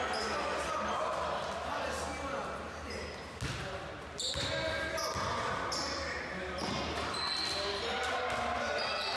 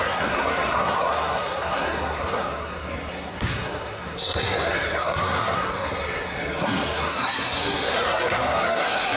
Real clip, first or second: first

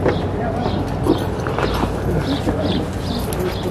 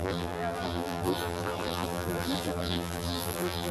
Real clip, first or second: first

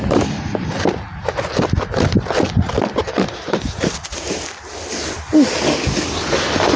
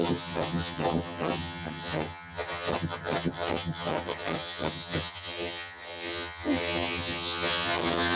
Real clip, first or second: first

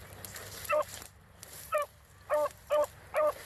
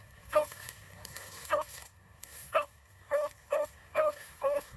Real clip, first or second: first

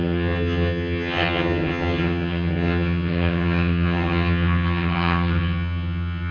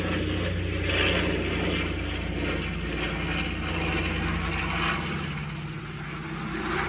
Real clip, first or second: second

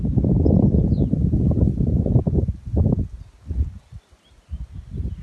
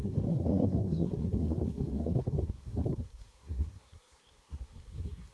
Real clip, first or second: first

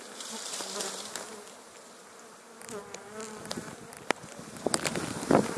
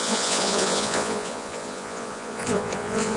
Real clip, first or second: first